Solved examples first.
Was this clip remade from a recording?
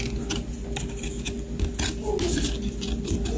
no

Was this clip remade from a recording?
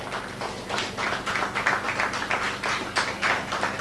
no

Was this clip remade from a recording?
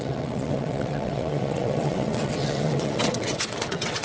yes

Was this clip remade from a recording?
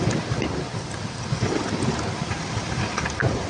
no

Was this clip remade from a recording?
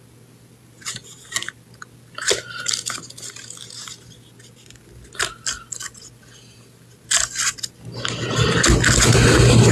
no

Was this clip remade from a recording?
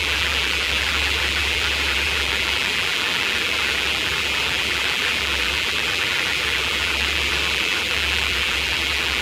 yes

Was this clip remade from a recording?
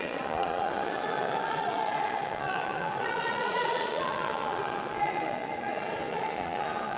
yes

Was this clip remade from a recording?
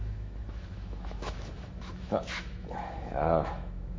yes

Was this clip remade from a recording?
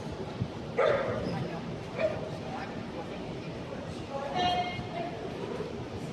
yes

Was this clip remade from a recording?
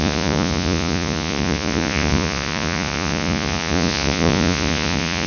yes